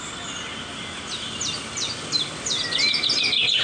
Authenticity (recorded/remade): recorded